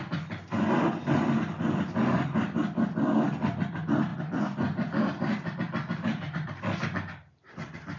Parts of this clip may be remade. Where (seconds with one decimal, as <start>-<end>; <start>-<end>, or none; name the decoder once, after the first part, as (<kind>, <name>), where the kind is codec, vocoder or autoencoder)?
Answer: 0.0-2.6 (vocoder, BigVGAN v2); 3.2-8.0